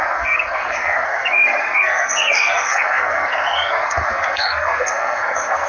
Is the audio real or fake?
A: fake